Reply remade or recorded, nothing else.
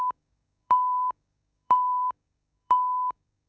remade